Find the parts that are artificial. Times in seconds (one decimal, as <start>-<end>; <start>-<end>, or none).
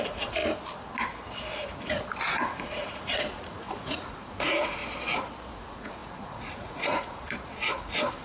0.0-0.4; 2.3-4.8; 5.5-8.2